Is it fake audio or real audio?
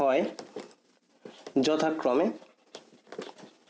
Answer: real